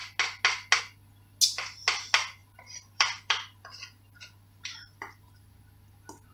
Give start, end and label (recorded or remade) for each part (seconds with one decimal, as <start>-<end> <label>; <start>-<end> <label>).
0.0-2.4 recorded; 2.4-5.6 remade; 5.6-6.3 recorded

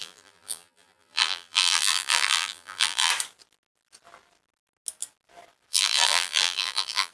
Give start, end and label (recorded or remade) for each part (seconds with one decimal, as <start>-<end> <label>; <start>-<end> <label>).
0.0-3.1 remade; 3.1-5.7 recorded; 5.7-7.1 remade

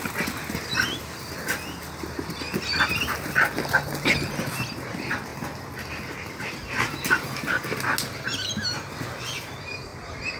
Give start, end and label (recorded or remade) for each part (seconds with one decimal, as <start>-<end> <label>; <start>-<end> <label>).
0.0-10.4 recorded

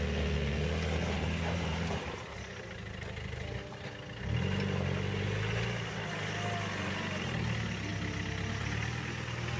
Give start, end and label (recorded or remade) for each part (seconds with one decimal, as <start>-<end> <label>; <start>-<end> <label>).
0.0-9.6 recorded

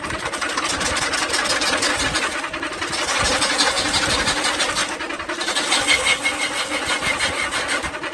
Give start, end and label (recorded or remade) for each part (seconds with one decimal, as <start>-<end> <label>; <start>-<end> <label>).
0.0-8.1 recorded

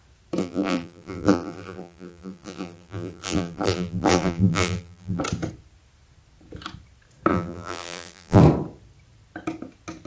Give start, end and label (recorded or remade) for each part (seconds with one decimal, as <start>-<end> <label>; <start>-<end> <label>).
0.0-0.4 recorded; 0.4-5.2 remade; 5.2-7.3 recorded; 7.3-8.4 remade; 8.4-10.1 recorded

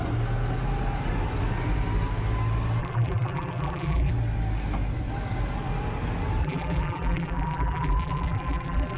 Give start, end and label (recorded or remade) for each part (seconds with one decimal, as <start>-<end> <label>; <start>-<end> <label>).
0.0-2.8 recorded; 2.8-4.1 remade; 4.1-6.4 recorded; 6.4-9.0 remade

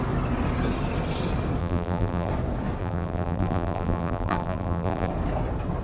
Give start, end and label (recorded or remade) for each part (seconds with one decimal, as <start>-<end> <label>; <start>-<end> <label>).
0.0-1.6 recorded; 1.6-2.3 remade; 2.3-2.8 recorded; 2.8-5.1 remade; 5.1-5.8 recorded